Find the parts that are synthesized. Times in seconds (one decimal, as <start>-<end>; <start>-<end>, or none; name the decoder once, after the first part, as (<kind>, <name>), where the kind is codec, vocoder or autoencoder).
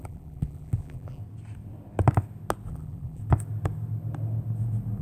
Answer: 0.0-1.2 (vocoder, BigVGAN v2); 2.7-3.2